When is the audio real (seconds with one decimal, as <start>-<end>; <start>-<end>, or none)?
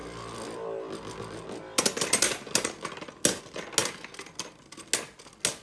0.0-5.6